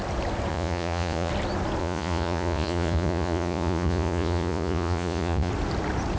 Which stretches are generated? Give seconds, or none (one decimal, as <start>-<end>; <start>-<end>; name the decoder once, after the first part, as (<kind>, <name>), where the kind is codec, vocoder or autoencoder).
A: 0.5-1.3 (vocoder, Vocos); 1.8-5.5